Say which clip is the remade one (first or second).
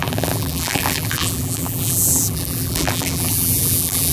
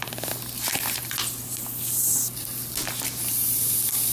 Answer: first